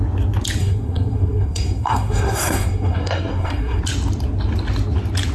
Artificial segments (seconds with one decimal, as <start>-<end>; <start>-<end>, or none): 0.6-3.8